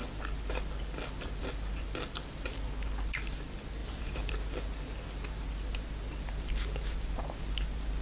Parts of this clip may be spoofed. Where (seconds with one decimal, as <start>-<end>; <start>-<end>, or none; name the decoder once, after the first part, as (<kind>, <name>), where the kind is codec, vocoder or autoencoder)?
3.8-4.3 (vocoder, BigVGAN v2)